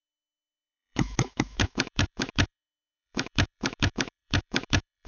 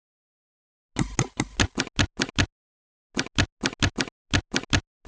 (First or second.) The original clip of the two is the second